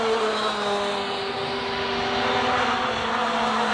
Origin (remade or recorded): recorded